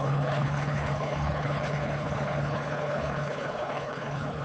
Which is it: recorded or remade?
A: remade